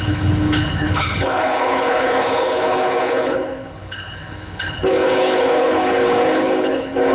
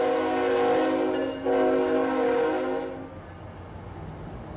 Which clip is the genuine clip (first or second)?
second